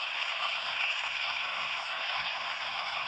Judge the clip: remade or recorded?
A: remade